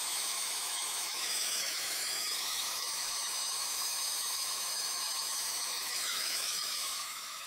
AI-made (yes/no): yes